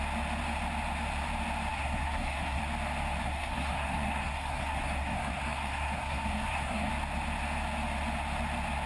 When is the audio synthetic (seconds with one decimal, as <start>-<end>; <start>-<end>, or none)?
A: 1.7-2.6; 3.2-6.9